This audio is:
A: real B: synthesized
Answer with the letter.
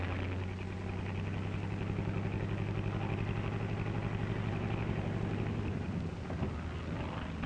A